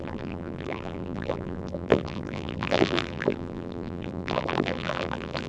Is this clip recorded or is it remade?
remade